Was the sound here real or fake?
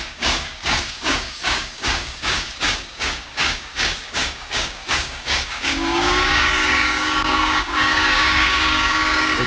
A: fake